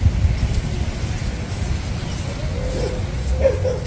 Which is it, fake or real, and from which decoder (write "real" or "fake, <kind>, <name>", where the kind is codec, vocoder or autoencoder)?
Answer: real